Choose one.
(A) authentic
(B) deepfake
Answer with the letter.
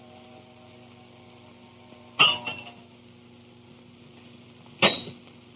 A